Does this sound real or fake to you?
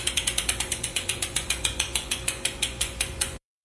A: fake